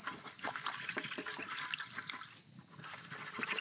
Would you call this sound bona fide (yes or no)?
yes